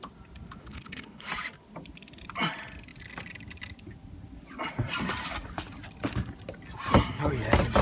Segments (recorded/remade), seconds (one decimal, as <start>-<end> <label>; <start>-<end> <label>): 0.0-0.6 recorded; 0.6-1.3 remade; 1.3-7.8 recorded